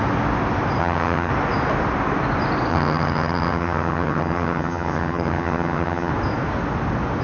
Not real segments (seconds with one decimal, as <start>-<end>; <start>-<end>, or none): 0.8-1.3; 2.7-6.1